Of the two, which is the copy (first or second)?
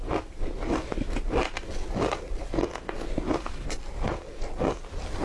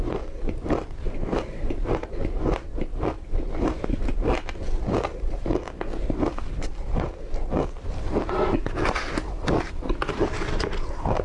second